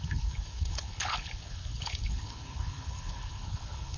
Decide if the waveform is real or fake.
fake